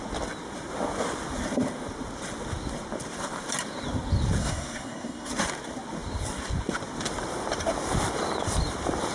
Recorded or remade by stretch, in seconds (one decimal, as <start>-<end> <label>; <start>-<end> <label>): 0.0-4.4 recorded; 4.4-5.3 remade; 5.3-9.1 recorded